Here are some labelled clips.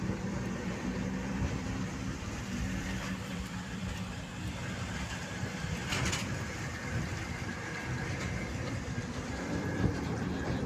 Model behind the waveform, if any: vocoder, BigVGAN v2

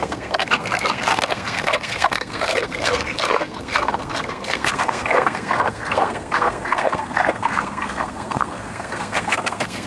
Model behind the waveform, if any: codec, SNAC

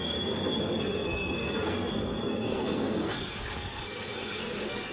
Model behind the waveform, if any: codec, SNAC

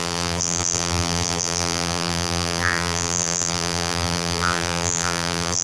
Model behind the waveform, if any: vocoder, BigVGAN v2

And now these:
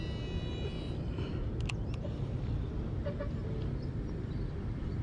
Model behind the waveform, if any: none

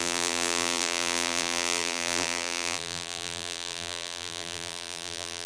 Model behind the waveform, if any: vocoder, BigVGAN v2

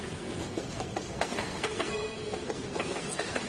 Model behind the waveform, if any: codec, SNAC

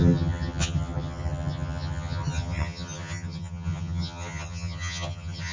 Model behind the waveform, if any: vocoder, HiFi-GAN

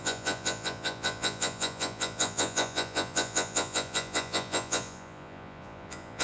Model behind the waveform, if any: vocoder, Vocos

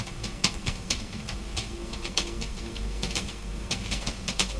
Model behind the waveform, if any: codec, SNAC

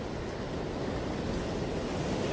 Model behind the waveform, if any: none